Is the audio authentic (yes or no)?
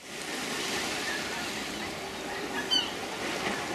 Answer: yes